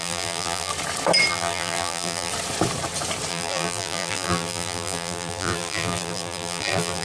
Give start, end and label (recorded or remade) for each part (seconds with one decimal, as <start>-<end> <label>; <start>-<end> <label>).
0.0-0.7 remade; 0.7-1.3 recorded; 1.3-2.3 remade; 2.3-3.3 recorded; 3.3-7.0 remade